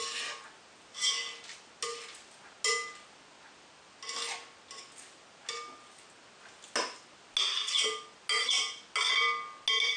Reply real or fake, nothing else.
real